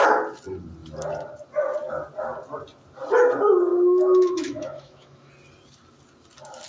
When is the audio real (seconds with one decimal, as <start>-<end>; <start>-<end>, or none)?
0.0-3.7; 5.3-6.7